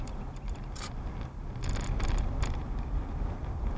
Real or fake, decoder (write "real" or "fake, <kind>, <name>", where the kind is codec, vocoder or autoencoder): fake, vocoder, BigVGAN v2